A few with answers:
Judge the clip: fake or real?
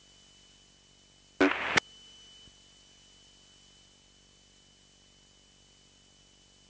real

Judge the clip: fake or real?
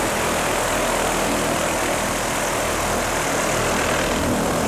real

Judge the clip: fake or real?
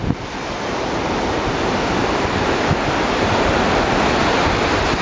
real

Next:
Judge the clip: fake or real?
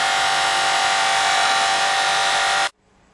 real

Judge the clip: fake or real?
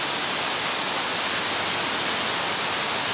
real